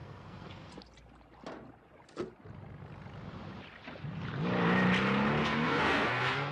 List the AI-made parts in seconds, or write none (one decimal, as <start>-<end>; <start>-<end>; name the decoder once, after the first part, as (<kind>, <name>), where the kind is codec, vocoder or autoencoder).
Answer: 0.0-0.7 (codec, SNAC); 5.4-6.5